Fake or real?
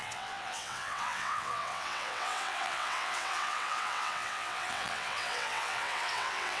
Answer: fake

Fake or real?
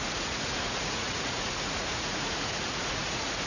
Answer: fake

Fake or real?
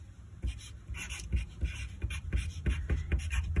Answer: real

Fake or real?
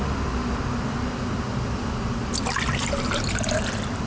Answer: real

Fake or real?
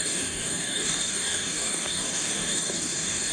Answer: fake